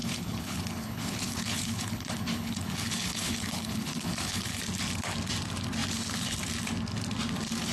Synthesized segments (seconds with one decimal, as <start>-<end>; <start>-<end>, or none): 0.0-4.6